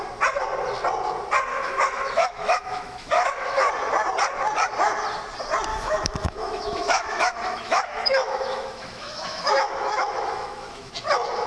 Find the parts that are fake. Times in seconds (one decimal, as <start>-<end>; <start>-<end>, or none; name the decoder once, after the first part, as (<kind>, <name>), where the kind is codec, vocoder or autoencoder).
1.5-3.7 (autoencoder, DAC-VAE); 5.7-10.9